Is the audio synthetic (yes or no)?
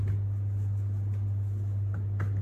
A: no